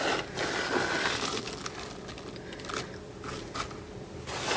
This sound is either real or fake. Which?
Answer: real